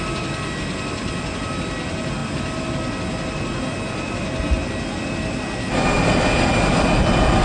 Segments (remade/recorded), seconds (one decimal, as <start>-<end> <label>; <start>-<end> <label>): 0.0-7.4 recorded